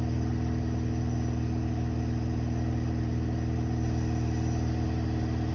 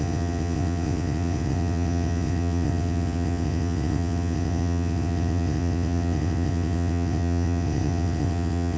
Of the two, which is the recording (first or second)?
first